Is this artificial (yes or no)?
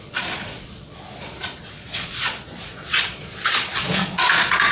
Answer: yes